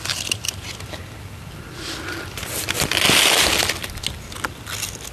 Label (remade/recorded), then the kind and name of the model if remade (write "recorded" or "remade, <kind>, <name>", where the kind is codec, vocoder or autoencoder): recorded